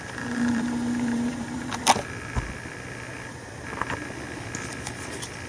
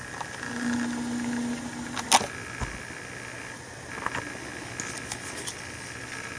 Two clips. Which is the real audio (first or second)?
second